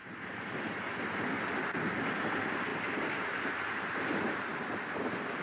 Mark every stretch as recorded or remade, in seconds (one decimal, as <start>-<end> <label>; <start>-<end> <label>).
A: 0.0-0.6 remade; 0.6-2.7 recorded; 2.7-5.0 remade; 5.0-5.4 recorded